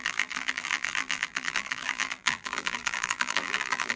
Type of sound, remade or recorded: remade